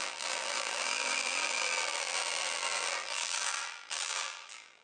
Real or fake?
fake